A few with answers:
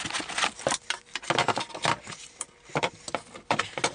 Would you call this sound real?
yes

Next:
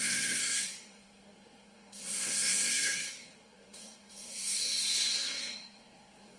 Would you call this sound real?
no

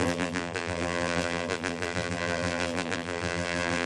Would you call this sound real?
no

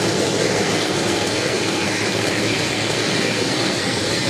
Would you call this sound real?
no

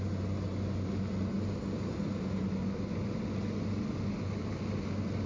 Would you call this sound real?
yes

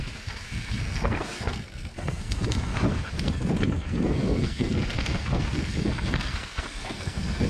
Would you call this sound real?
no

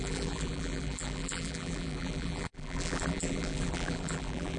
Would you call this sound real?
no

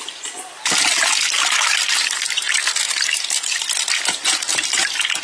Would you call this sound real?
yes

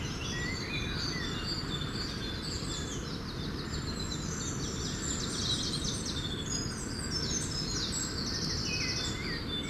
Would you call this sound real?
yes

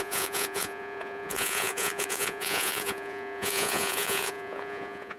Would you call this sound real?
no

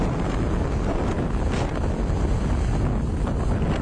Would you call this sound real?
yes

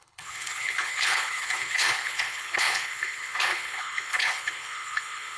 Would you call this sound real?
no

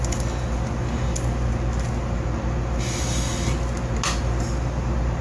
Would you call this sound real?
yes